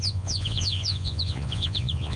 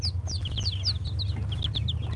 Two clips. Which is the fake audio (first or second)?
first